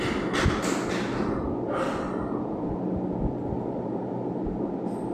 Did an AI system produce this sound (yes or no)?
no